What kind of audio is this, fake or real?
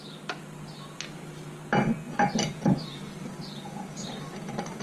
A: real